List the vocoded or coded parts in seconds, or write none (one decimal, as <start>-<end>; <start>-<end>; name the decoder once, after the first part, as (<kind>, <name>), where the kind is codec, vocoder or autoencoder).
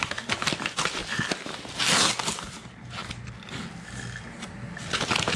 none